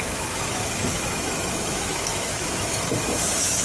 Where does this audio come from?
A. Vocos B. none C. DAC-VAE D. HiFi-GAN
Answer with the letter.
C